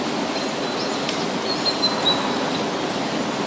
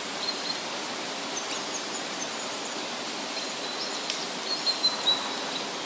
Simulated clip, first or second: second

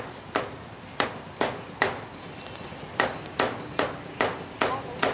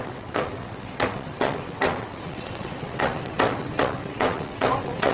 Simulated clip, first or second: second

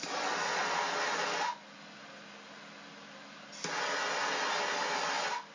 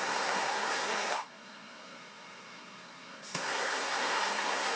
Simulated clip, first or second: second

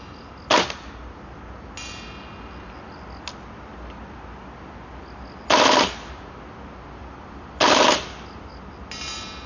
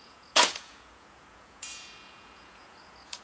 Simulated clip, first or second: second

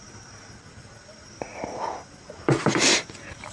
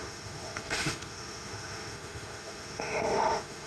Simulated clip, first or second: second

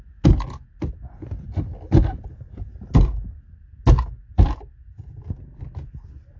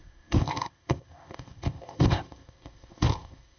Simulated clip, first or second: second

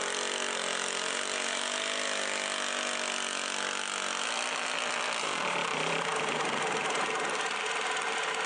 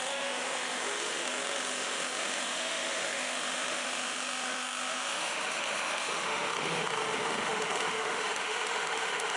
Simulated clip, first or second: second